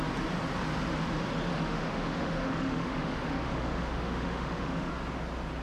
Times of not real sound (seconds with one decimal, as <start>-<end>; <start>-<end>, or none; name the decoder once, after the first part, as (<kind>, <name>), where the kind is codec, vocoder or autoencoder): 1.5-4.9 (autoencoder, DAC-VAE)